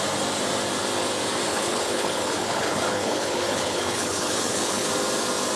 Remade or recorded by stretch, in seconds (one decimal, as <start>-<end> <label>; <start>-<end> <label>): 0.0-1.5 recorded; 1.5-4.9 remade; 4.9-5.6 recorded